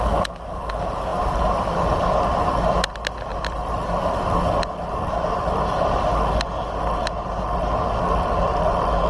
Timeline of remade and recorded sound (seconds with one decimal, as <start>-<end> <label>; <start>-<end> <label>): 0.0-1.1 recorded; 1.1-2.2 remade; 2.2-3.3 recorded; 3.3-4.9 remade; 4.9-9.1 recorded